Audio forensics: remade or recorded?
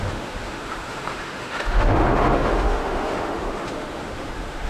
remade